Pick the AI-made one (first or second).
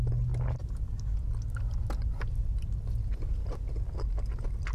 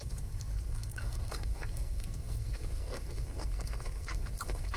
second